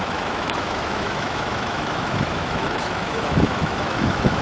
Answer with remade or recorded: remade